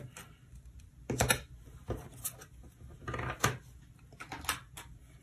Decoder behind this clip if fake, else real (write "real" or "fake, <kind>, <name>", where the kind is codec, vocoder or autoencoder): real